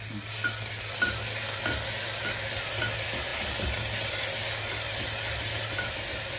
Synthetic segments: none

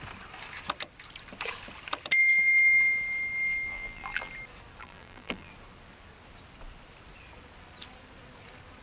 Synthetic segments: 3.7-4.3; 4.8-5.5

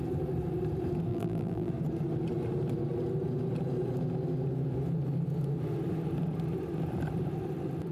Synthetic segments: 1.1-1.7

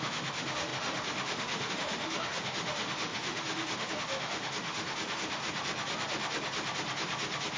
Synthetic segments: 0.0-5.4

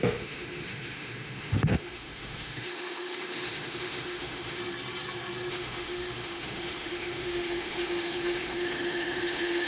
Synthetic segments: 0.0-4.6; 5.5-9.7

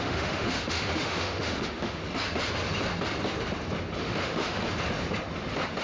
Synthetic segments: 0.0-2.0; 4.0-4.6

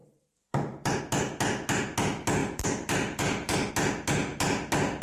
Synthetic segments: 0.0-1.0; 2.4-3.7

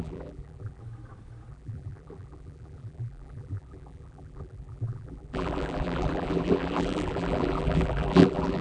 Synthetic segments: 0.0-0.8; 1.5-8.6